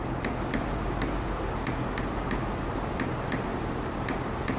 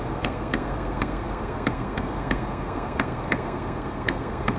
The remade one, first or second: second